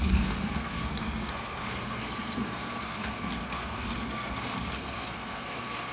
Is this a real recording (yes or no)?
no